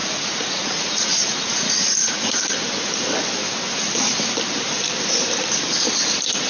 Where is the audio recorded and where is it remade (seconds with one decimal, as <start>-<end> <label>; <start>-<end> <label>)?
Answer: 0.0-2.4 remade; 2.4-6.5 recorded

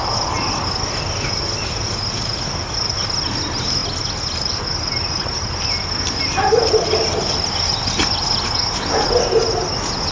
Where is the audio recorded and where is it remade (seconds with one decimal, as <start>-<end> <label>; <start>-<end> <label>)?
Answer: 0.0-10.1 recorded

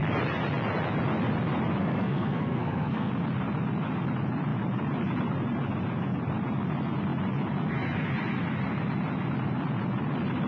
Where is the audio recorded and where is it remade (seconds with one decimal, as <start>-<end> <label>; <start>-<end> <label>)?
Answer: 0.0-1.8 recorded; 1.8-3.1 remade; 3.1-10.5 recorded

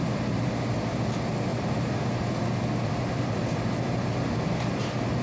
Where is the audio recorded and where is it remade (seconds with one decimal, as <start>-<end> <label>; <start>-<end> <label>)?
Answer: 0.0-5.2 recorded

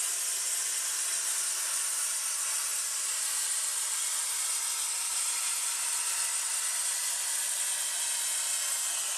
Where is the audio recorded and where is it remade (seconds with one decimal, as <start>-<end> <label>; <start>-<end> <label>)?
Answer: 0.0-9.2 recorded